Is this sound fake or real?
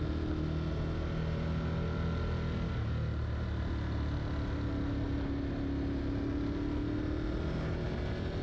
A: real